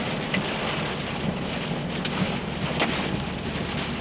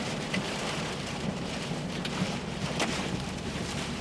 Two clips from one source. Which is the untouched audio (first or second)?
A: first